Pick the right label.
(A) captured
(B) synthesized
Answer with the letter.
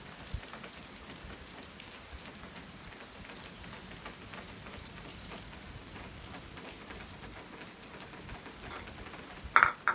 A